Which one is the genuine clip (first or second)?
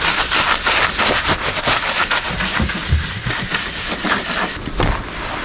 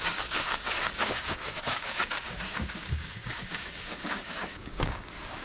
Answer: first